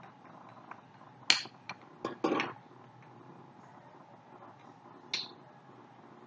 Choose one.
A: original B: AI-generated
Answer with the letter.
A